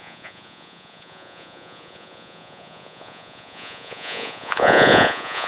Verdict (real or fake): fake